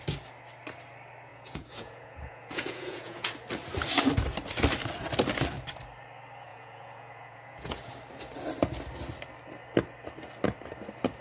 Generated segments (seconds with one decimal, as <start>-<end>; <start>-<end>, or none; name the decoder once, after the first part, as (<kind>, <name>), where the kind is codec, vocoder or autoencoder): 1.3-3.3 (vocoder, Vocos); 6.5-7.9